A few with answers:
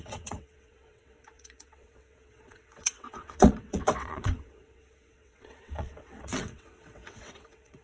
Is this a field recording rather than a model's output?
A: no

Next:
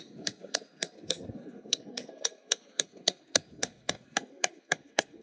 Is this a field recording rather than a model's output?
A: no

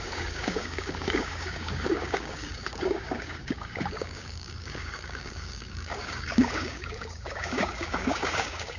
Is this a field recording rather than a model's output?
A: no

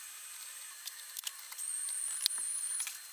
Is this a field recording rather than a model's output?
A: yes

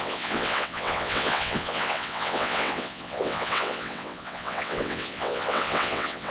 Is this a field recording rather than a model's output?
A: no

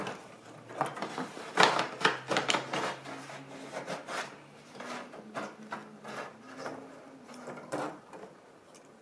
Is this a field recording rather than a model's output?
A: yes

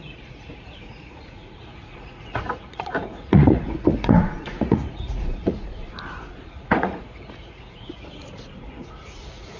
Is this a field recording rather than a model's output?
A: no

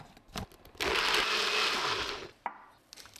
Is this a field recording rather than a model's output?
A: yes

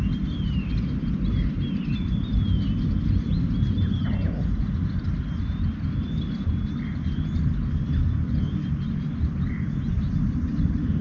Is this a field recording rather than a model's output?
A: yes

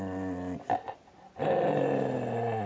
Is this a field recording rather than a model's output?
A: yes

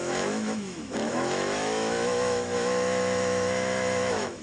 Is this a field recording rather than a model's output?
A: no